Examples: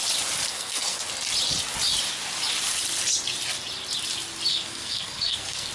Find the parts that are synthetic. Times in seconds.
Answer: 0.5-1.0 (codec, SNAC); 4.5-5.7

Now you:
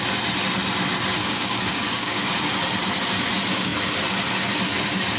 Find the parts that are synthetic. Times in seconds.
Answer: 1.2-2.4 (codec, DAC)

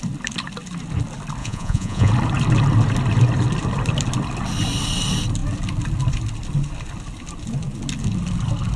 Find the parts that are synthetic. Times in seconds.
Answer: 1.4-2.1 (vocoder, Vocos)